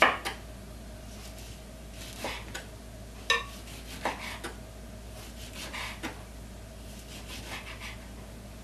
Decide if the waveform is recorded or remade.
recorded